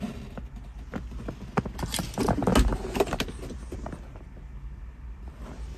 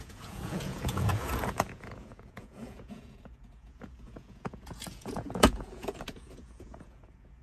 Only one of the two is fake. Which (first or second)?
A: second